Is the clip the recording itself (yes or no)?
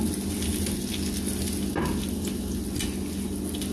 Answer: yes